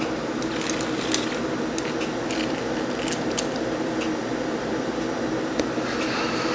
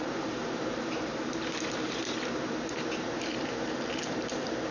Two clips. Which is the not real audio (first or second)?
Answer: second